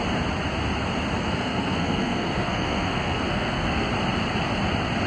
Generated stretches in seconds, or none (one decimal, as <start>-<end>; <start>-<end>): 1.2-3.9